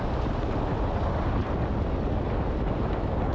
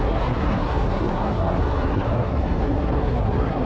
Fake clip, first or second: second